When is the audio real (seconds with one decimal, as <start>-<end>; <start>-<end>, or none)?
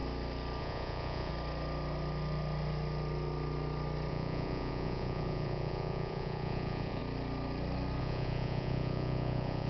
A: 0.0-0.6; 1.3-4.1; 7.0-8.0